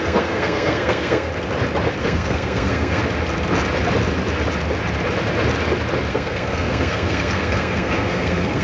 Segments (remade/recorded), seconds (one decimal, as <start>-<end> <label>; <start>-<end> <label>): 0.0-1.3 remade; 1.3-2.0 recorded; 2.0-3.0 remade; 3.0-6.1 recorded; 6.1-8.6 remade

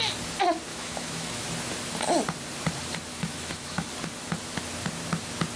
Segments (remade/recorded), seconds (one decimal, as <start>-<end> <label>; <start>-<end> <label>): 0.0-0.7 recorded; 0.7-1.4 remade; 1.4-3.1 recorded; 3.1-3.9 remade; 3.9-5.6 recorded

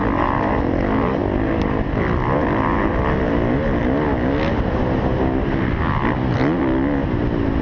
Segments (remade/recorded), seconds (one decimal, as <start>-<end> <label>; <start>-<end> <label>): 0.0-7.6 recorded

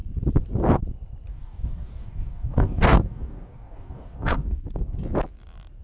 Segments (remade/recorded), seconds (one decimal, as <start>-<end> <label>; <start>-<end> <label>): 0.0-1.3 recorded; 1.3-4.8 remade; 4.8-5.8 recorded

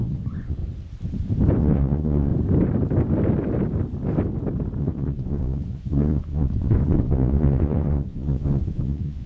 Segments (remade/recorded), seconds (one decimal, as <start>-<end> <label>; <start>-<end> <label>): 0.0-0.6 remade; 0.6-1.6 recorded; 1.6-2.3 remade; 2.3-4.8 recorded; 4.8-9.3 remade

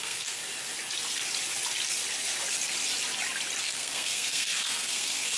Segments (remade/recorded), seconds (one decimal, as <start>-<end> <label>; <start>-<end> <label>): 0.0-0.4 remade; 0.4-3.6 recorded; 3.6-5.4 remade

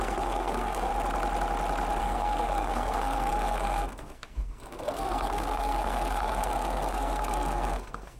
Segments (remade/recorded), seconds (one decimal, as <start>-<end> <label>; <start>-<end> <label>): 0.0-0.9 remade; 0.9-2.0 recorded; 2.0-8.2 remade

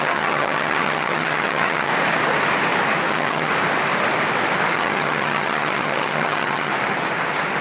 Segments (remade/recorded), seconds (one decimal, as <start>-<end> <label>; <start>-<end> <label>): 0.0-1.9 remade; 1.9-3.1 recorded; 3.1-3.5 remade; 3.5-4.7 recorded; 4.7-6.7 remade; 6.7-7.6 recorded